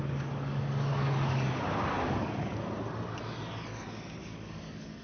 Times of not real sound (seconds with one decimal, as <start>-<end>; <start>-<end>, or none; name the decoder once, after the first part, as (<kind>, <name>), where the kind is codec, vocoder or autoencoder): 0.0-2.5 (codec, DAC); 4.2-5.0